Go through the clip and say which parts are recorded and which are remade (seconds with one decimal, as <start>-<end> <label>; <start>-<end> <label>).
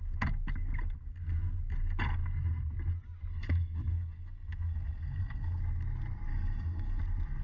0.0-3.3 recorded; 3.3-5.6 remade; 5.6-6.3 recorded; 6.3-7.0 remade; 7.0-7.4 recorded